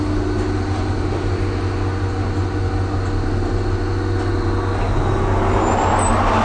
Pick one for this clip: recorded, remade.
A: recorded